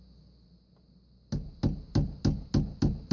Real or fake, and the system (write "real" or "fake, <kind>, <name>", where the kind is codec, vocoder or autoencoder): real